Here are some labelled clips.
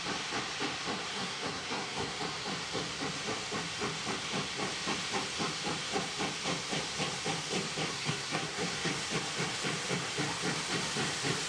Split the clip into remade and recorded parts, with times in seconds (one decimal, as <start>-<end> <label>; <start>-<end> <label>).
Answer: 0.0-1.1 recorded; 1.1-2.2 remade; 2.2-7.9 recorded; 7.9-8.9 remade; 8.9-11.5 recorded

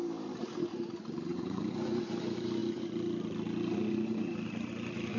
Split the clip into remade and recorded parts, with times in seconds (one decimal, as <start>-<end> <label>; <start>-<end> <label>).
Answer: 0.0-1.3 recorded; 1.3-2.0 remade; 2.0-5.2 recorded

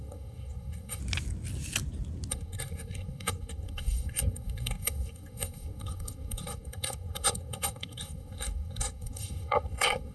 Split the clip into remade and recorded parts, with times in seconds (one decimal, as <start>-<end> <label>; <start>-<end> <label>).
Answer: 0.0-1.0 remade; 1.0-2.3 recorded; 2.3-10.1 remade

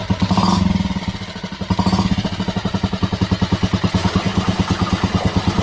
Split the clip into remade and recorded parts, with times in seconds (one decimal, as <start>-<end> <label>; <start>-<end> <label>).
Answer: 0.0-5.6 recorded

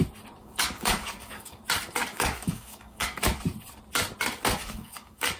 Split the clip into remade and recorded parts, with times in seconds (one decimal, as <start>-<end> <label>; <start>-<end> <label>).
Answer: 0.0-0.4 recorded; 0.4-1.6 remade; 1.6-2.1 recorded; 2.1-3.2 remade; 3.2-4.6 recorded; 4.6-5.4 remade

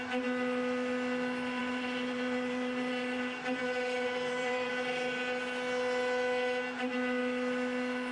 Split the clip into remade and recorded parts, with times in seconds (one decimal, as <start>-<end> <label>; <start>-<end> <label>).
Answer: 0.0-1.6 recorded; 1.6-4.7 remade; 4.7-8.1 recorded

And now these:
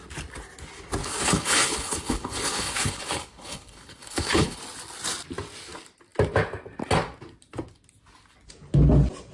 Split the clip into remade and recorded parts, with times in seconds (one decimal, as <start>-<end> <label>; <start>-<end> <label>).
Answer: 0.0-1.0 recorded; 1.0-4.6 remade; 4.6-9.3 recorded